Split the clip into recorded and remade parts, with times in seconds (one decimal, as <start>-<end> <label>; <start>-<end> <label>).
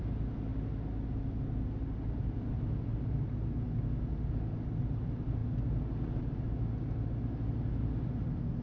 0.0-8.6 recorded